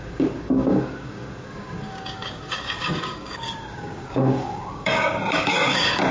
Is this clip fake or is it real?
fake